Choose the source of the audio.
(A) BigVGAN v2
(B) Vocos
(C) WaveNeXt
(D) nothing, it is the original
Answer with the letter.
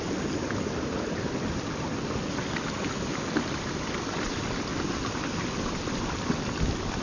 D